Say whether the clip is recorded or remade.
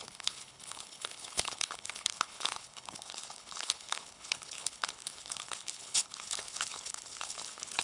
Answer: remade